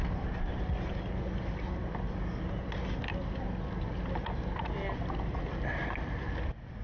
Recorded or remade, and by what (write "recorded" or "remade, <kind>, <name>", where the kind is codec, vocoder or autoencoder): recorded